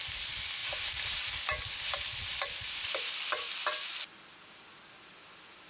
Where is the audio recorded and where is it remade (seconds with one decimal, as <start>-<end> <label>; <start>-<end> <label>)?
0.0-5.7 recorded